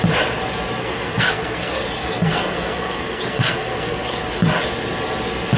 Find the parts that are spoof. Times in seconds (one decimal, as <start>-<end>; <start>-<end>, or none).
0.8-4.2